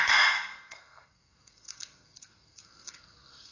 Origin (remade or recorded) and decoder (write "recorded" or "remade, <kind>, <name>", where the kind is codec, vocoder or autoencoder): remade, codec, SNAC